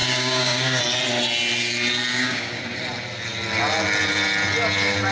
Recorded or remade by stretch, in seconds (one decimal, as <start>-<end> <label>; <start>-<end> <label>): 0.0-0.8 remade; 0.8-2.1 recorded; 2.1-2.6 remade; 2.6-5.1 recorded